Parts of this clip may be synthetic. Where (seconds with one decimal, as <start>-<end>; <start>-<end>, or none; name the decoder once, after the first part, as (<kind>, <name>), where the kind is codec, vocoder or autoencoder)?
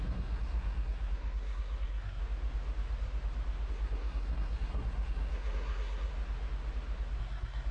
0.0-2.2 (codec, SNAC); 3.7-6.1; 7.2-7.7